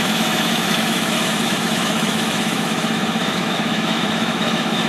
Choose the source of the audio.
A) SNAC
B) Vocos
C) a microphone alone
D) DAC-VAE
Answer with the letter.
D